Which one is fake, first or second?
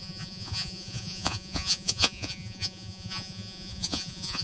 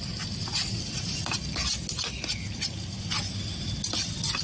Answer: first